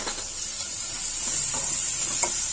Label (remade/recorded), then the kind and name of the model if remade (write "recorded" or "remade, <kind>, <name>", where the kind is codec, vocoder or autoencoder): recorded